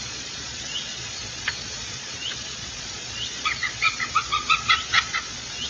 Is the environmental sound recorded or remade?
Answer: remade